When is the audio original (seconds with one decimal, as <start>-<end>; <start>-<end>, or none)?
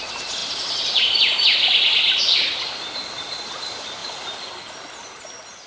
0.0-5.7